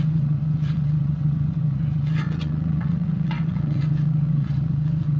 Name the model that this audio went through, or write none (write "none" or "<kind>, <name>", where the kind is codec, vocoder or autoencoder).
vocoder, WaveNeXt